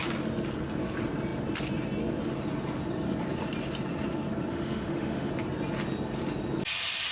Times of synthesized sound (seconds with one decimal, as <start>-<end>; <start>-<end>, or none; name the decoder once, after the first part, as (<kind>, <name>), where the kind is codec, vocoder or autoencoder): 4.5-5.3 (autoencoder, DAC-VAE)